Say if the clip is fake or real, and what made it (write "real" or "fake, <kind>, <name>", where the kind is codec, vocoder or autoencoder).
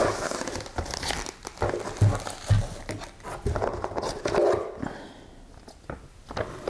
real